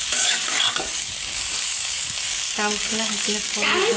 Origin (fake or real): fake